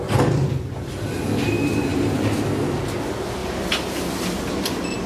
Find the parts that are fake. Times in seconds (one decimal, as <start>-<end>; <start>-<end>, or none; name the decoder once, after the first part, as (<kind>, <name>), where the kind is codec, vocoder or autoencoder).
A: 1.9-2.5 (vocoder, BigVGAN v2); 3.4-4.1